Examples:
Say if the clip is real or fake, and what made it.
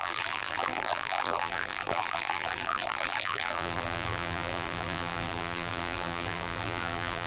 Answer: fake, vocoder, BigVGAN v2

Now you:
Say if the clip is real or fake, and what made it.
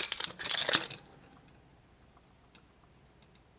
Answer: real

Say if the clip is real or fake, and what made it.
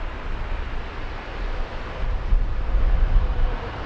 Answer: real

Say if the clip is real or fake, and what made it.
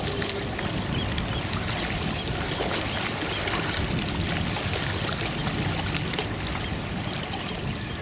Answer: real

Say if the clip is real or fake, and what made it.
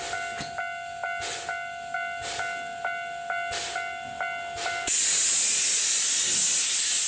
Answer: real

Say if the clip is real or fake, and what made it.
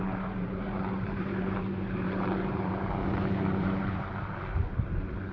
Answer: fake, vocoder, BigVGAN v2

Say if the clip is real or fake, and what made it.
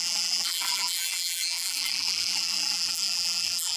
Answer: fake, vocoder, BigVGAN v2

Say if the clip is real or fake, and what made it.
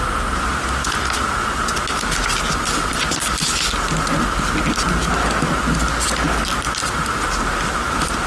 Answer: real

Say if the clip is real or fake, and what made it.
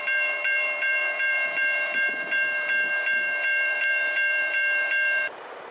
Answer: fake, vocoder, BigVGAN v2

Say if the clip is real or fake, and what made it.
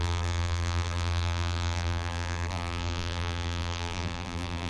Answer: fake, vocoder, BigVGAN v2